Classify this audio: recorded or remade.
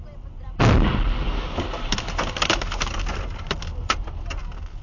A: recorded